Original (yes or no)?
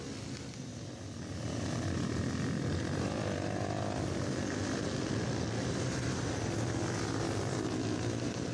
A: yes